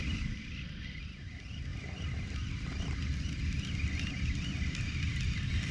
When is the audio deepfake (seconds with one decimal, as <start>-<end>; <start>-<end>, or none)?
none